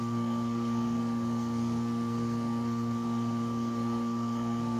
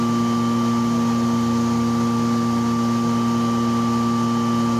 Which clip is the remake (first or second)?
first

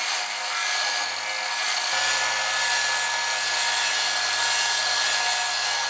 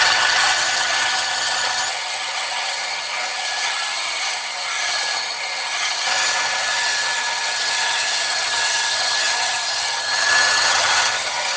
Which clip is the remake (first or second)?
second